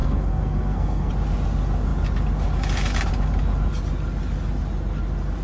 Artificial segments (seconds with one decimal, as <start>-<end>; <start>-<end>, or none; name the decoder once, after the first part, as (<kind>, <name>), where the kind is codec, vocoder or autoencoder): 0.0-1.1 (codec, SNAC)